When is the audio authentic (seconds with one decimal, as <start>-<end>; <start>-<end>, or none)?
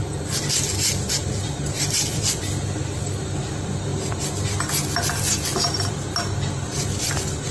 0.0-1.2; 2.4-5.5; 6.1-7.5